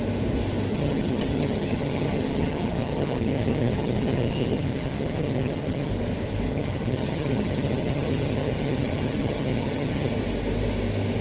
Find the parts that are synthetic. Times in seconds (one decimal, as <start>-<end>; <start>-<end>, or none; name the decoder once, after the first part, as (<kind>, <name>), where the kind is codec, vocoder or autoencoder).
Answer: 0.7-5.9 (vocoder, HiFi-GAN); 6.5-10.1